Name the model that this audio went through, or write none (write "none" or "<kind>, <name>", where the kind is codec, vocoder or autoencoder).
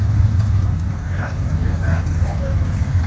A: codec, DAC